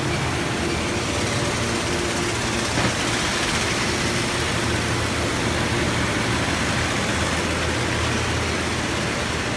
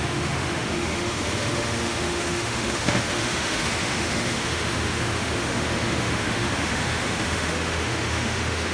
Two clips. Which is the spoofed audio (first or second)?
second